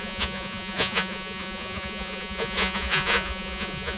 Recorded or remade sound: remade